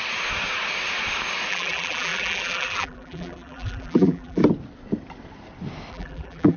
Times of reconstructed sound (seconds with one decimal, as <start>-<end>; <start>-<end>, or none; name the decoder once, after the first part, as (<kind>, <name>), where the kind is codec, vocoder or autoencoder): 1.5-4.4 (vocoder, BigVGAN v2); 5.9-6.6

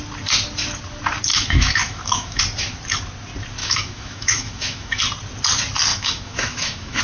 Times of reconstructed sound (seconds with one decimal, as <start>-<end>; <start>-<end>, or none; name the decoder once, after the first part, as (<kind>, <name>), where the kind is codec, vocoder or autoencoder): 1.3-2.4 (autoencoder, DAC-VAE); 3.6-5.0; 5.9-7.0

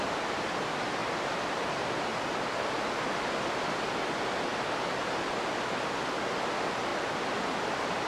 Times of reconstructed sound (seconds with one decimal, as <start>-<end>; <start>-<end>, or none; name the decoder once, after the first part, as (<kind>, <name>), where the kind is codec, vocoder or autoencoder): 6.9-8.1 (vocoder, BigVGAN v2)

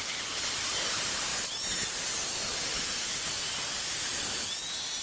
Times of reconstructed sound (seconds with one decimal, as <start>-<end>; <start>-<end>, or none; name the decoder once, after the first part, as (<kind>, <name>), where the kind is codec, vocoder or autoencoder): none

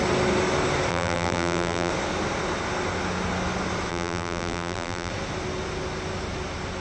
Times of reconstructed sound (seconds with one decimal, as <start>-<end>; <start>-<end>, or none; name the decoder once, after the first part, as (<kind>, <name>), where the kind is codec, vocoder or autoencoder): 0.9-1.9 (vocoder, BigVGAN v2); 3.9-5.1

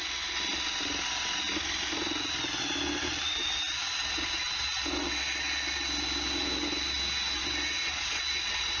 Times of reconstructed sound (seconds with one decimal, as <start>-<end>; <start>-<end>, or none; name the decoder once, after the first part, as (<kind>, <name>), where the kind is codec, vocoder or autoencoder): none

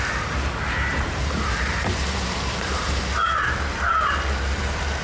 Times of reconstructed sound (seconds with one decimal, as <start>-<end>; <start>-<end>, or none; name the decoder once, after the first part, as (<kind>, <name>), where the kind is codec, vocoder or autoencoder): 0.9-3.0 (vocoder, BigVGAN v2)